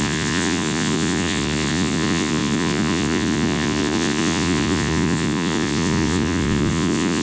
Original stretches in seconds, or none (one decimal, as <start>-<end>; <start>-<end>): none